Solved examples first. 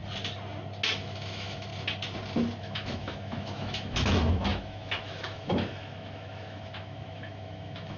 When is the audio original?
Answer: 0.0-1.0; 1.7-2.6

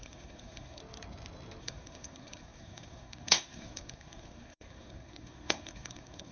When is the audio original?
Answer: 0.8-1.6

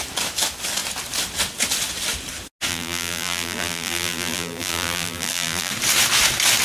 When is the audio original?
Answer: 0.0-2.7; 5.7-6.6

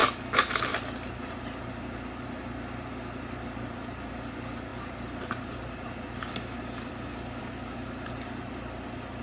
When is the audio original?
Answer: 0.6-9.2

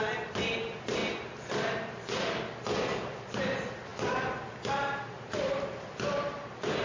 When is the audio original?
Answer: 1.0-1.6